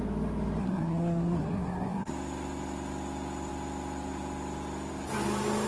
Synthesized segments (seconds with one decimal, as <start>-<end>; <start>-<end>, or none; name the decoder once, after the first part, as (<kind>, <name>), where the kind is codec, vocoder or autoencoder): 0.6-2.1 (codec, SNAC)